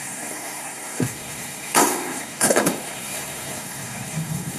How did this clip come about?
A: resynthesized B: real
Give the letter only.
A